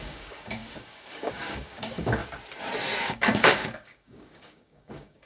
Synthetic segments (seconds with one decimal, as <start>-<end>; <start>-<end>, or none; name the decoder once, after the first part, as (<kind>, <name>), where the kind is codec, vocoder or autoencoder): 0.0-2.2 (codec, DAC); 3.0-5.3